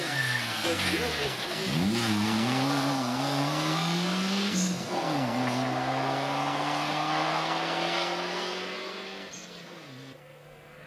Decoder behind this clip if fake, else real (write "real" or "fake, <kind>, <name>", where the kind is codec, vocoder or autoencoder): fake, codec, SNAC